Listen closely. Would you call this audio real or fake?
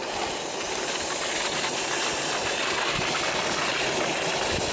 real